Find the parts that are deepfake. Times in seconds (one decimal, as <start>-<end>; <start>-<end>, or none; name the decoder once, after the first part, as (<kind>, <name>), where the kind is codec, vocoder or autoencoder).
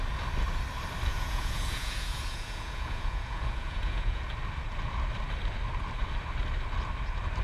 1.1-4.2 (vocoder, Vocos)